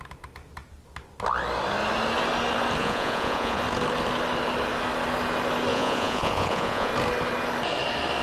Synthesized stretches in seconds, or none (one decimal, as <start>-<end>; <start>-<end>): 2.8-3.6; 5.7-6.9